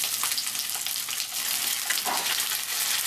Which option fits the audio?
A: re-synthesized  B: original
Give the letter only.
B